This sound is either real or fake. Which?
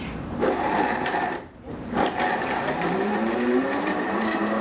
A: fake